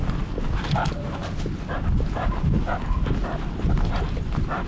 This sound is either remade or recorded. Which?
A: recorded